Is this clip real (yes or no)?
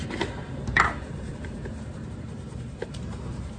no